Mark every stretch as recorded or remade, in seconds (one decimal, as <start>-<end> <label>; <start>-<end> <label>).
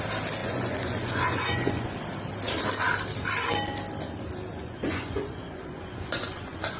0.0-0.4 recorded; 0.4-1.9 remade; 1.9-4.5 recorded; 4.5-6.8 remade